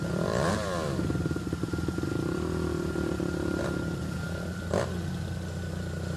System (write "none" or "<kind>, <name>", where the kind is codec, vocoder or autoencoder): none